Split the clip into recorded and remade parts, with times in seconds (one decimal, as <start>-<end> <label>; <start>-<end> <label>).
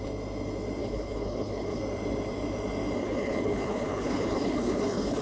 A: 0.0-0.8 recorded; 0.8-1.8 remade; 1.8-3.0 recorded; 3.0-5.2 remade